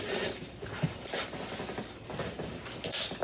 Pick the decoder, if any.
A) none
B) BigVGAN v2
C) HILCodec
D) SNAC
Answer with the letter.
B